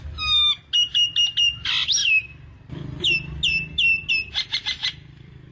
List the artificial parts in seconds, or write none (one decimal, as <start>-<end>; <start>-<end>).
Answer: 2.0-4.1; 4.8-5.5